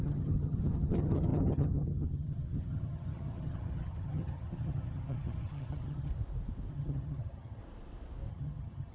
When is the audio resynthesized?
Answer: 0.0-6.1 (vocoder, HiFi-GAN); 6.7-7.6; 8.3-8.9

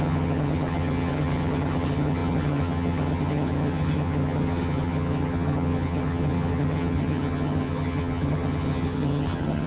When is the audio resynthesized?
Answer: 0.0-9.7 (vocoder, HiFi-GAN)

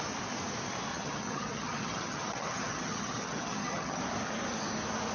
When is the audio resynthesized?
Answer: 0.9-4.0 (vocoder, HiFi-GAN)

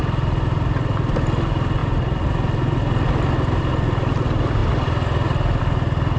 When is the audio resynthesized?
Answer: none